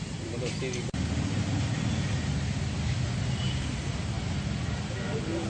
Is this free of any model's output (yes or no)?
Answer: yes